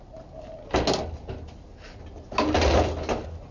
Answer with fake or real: real